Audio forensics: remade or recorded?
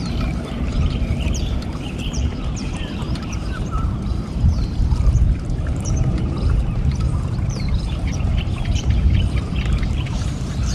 remade